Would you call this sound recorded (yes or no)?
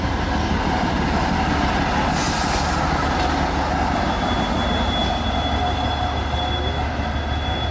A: yes